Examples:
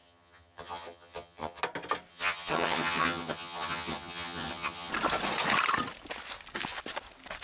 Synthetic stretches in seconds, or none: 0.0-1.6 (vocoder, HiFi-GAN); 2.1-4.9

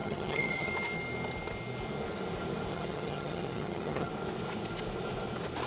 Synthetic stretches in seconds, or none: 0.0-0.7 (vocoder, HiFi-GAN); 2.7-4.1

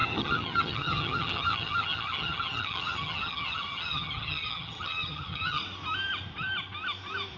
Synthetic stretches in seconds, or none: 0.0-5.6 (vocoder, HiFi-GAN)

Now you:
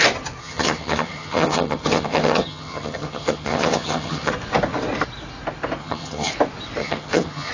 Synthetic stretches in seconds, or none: 0.4-4.3 (vocoder, HiFi-GAN); 5.8-6.3; 6.8-7.5